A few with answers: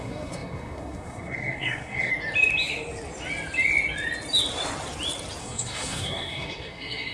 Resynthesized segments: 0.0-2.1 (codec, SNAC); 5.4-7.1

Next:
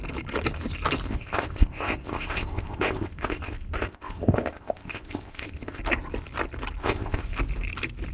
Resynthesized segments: 1.1-5.8 (codec, ZipCodec); 6.8-7.4

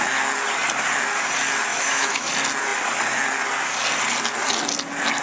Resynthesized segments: 1.7-2.3 (autoencoder, DAC-VAE)

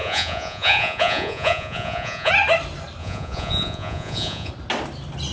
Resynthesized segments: 0.0-2.3 (vocoder, Vocos); 3.0-4.5

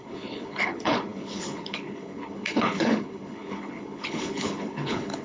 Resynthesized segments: 0.0-5.2 (codec, HILCodec)